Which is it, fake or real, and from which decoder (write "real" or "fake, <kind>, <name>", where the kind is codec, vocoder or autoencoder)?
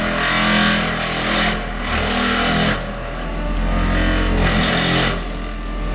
real